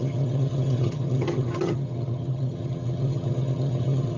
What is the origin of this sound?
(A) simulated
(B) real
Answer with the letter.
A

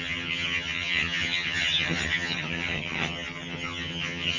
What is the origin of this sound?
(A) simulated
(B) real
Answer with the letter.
A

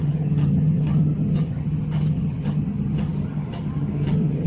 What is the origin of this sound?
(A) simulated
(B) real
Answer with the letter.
A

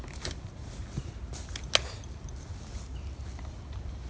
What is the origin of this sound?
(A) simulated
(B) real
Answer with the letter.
B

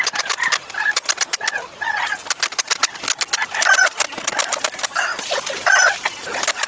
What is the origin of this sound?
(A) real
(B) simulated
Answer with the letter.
A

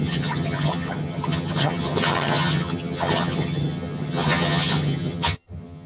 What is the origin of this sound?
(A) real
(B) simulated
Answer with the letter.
B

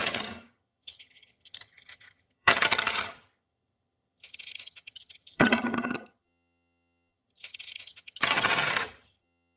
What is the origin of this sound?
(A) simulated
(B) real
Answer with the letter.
A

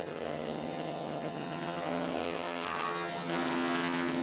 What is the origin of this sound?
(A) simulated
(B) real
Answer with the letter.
A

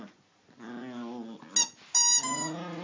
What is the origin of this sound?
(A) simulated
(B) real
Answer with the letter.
B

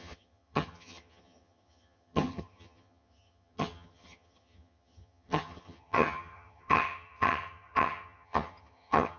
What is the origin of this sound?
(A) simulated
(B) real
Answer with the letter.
A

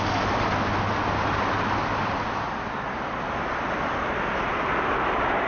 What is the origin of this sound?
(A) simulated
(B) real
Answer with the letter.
B